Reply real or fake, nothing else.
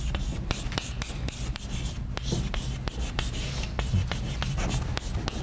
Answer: real